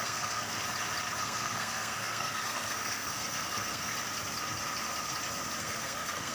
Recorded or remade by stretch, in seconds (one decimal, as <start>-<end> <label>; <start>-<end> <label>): 0.0-0.6 remade; 0.6-1.2 recorded; 1.2-3.9 remade; 3.9-5.6 recorded; 5.6-6.3 remade